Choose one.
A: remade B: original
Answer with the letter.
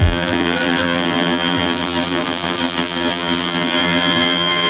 A